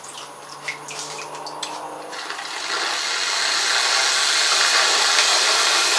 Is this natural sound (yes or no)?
yes